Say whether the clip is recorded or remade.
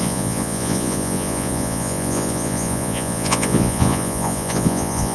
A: remade